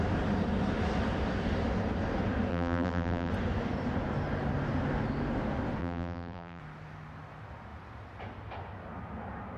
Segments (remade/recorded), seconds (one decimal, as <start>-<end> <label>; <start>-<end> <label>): 0.0-2.5 recorded; 2.5-3.3 remade; 3.3-5.8 recorded; 5.8-6.6 remade; 6.6-9.6 recorded